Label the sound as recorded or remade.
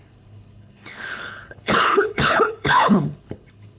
remade